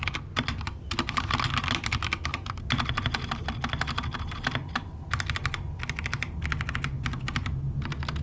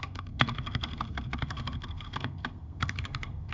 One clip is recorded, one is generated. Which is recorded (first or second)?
first